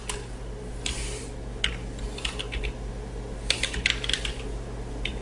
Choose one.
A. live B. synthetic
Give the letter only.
A